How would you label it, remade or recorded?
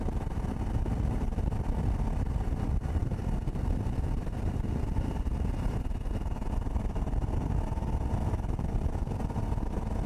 remade